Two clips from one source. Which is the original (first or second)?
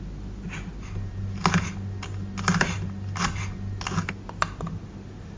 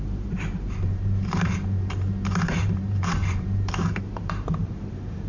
first